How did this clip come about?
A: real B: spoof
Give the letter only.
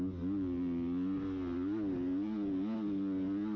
A